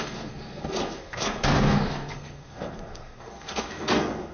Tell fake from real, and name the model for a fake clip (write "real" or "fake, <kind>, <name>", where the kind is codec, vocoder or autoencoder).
fake, codec, SNAC